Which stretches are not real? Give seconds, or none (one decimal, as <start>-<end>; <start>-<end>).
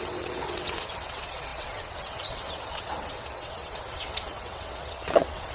0.0-5.5